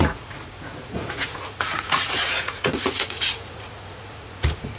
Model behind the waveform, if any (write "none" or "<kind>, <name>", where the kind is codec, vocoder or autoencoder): vocoder, Vocos